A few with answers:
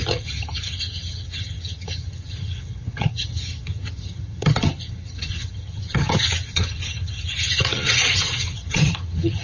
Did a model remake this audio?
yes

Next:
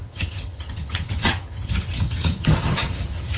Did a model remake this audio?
yes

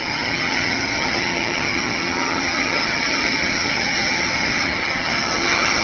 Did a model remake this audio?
yes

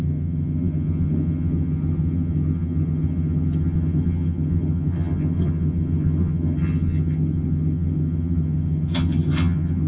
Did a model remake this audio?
yes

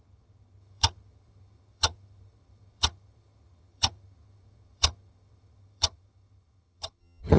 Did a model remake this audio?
yes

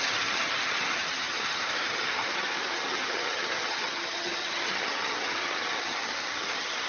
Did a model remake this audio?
yes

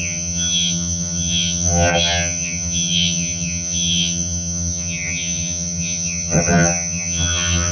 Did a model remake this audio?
yes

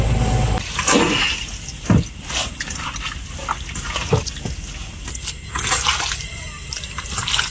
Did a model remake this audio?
no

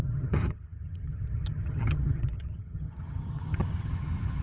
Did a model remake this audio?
yes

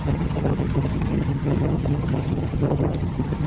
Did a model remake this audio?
yes